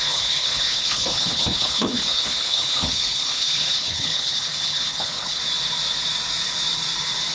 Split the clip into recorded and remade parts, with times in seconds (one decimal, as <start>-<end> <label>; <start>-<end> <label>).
0.0-5.4 remade; 5.4-7.3 recorded